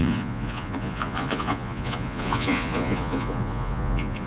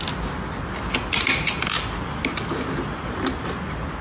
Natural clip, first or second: second